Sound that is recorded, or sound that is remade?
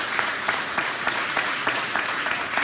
remade